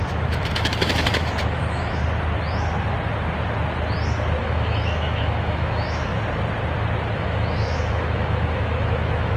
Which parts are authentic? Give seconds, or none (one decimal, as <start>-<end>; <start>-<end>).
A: 2.0-4.4; 6.1-7.1